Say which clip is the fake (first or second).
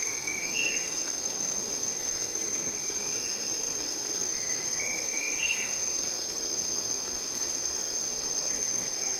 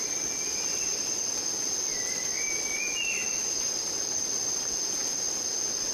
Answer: first